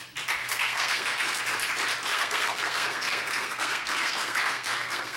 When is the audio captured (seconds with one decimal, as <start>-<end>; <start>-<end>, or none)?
0.0-0.4; 1.4-2.1